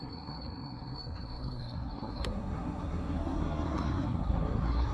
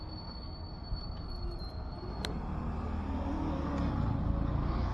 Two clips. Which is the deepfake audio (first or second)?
first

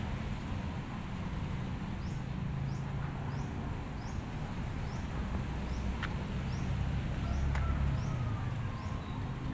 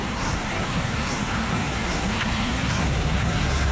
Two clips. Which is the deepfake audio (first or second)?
second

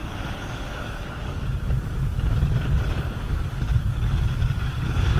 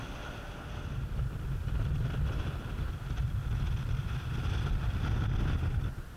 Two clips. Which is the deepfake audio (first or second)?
first